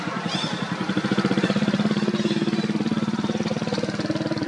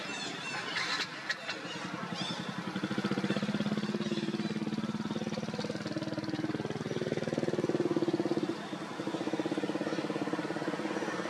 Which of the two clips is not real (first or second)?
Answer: first